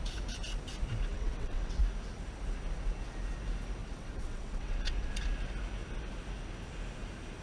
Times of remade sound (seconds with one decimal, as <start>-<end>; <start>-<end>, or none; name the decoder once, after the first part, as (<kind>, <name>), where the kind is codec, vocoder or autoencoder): 1.1-1.8 (vocoder, WaveNeXt); 3.8-5.1